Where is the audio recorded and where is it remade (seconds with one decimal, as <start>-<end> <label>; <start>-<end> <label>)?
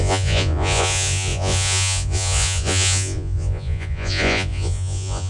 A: 0.0-5.3 remade